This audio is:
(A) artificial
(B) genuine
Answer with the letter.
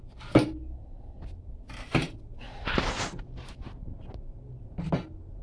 B